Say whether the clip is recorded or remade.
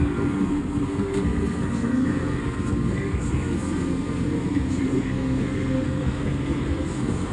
remade